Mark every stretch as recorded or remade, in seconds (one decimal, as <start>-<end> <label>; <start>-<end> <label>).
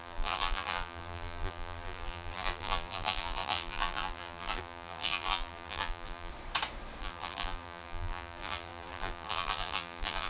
0.0-6.3 remade; 6.3-7.0 recorded; 7.0-10.3 remade